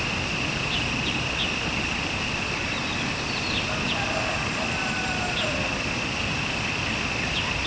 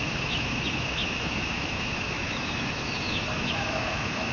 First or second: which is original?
first